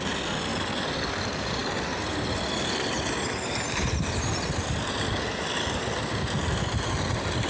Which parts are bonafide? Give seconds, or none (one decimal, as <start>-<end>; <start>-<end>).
0.0-7.5